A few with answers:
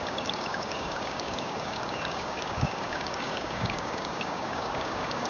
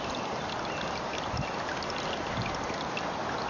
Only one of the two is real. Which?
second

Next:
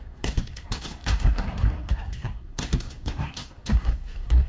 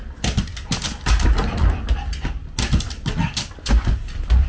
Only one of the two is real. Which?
second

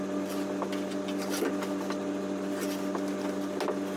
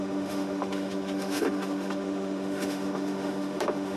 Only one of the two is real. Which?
first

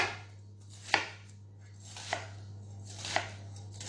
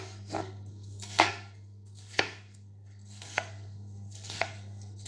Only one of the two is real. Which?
first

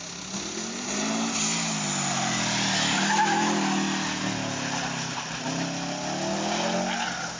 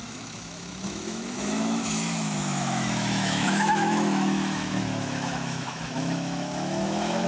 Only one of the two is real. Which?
first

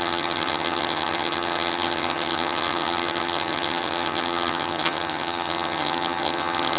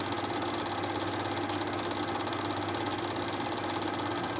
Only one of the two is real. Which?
second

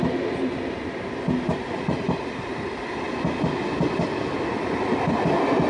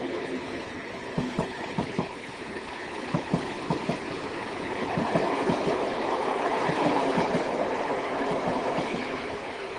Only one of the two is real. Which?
first